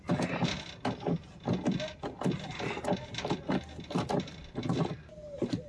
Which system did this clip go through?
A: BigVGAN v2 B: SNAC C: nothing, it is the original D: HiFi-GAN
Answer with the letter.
C